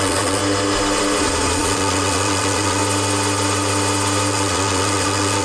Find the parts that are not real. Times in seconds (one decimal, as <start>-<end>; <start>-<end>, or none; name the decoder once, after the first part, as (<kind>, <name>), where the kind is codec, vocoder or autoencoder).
0.0-0.4 (vocoder, Vocos); 1.2-2.8; 4.3-5.4